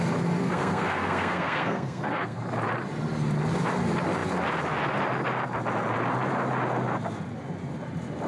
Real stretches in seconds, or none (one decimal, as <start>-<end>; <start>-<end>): 0.0-0.4; 2.4-8.3